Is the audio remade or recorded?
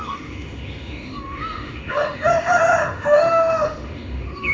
remade